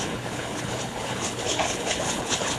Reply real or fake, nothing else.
fake